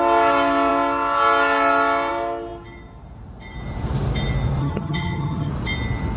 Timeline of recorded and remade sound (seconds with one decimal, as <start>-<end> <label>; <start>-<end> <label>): 0.0-4.6 recorded; 4.6-5.5 remade; 5.5-6.2 recorded